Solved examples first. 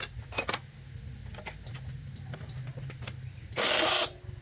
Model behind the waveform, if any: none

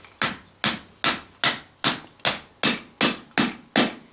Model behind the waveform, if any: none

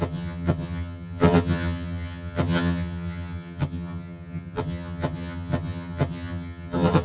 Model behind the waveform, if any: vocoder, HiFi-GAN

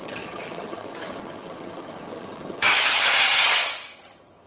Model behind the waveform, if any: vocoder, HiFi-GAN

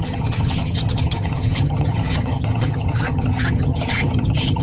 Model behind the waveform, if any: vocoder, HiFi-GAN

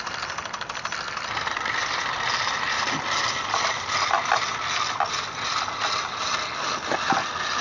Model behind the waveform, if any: none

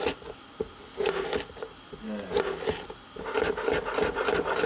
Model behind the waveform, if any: none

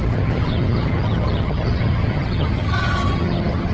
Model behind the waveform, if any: vocoder, HiFi-GAN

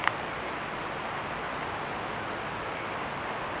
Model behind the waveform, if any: none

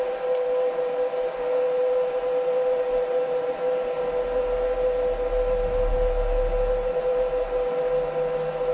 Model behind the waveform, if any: none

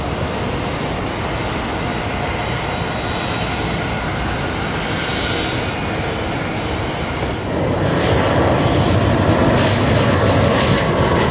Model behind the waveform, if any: none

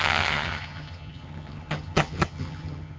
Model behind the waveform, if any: vocoder, HiFi-GAN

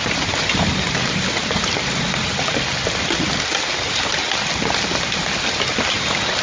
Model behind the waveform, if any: none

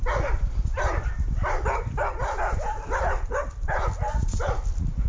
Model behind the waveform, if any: none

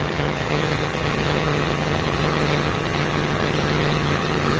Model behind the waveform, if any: vocoder, HiFi-GAN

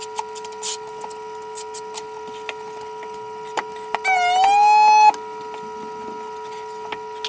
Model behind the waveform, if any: none